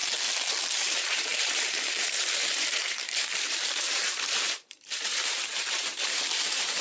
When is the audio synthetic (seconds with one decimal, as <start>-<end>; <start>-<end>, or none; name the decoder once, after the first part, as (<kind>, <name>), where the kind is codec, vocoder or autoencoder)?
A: 0.7-6.8 (vocoder, BigVGAN v2)